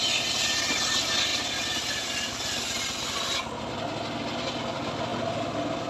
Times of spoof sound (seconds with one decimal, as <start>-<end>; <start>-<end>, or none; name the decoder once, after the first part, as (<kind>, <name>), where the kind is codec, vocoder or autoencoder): none